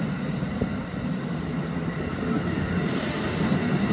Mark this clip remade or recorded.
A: recorded